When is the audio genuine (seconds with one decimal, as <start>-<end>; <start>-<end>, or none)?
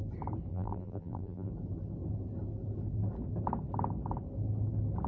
0.0-0.5; 1.5-5.1